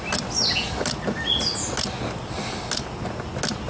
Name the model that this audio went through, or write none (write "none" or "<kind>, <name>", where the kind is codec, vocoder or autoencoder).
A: none